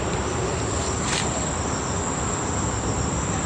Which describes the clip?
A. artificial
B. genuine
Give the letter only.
B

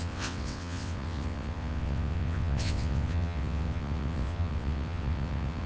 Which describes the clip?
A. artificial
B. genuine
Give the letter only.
A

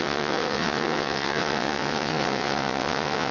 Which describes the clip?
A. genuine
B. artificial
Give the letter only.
B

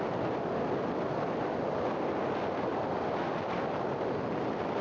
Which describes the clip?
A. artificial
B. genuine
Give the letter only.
B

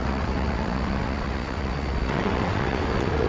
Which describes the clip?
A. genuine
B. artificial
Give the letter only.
B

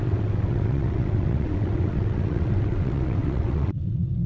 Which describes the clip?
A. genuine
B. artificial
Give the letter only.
B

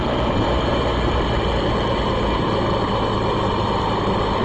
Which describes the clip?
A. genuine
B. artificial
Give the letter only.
A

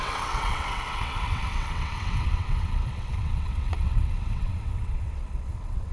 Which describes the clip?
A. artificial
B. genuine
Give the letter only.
A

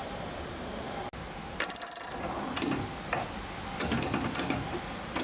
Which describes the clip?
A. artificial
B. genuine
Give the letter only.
B